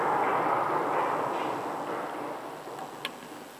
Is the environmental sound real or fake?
real